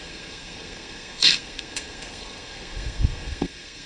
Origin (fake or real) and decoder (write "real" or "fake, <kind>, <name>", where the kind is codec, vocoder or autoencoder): fake, codec, SNAC